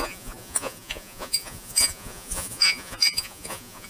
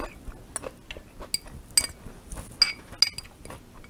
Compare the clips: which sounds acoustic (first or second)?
second